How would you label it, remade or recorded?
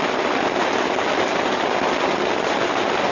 recorded